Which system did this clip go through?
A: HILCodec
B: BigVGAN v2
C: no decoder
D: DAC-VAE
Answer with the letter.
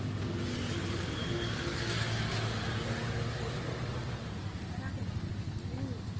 C